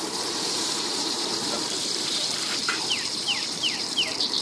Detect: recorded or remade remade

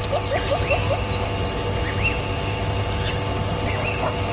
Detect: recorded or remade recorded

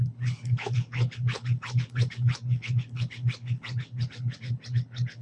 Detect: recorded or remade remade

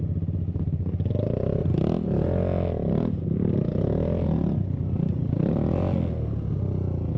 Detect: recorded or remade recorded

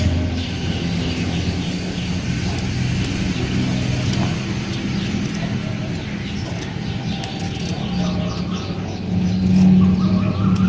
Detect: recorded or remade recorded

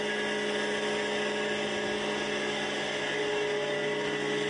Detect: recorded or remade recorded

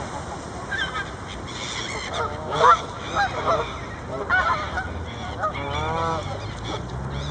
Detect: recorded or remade recorded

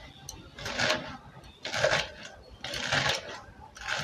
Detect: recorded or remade recorded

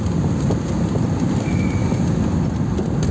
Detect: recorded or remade recorded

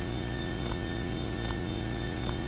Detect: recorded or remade remade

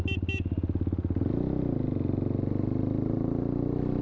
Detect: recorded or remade recorded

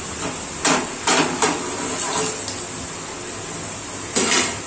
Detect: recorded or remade recorded